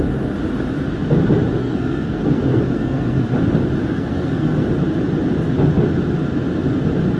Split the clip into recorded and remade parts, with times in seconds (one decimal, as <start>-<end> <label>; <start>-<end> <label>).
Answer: 0.0-1.6 recorded; 1.6-3.2 remade; 3.2-3.9 recorded; 3.9-4.7 remade; 4.7-7.2 recorded